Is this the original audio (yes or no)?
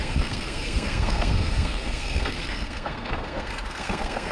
no